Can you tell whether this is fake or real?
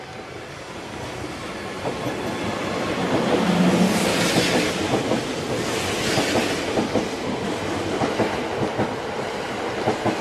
real